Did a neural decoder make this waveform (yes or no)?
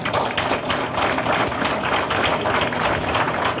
no